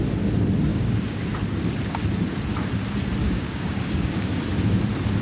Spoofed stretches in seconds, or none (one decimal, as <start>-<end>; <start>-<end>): 0.7-1.2; 3.2-4.3